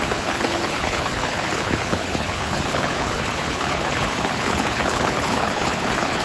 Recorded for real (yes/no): no